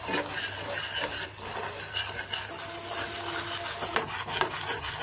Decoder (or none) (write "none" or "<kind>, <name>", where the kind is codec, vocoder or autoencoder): none